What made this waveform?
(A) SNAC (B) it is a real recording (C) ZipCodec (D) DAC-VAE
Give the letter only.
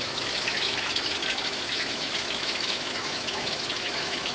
D